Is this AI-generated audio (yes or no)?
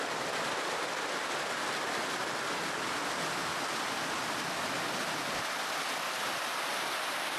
no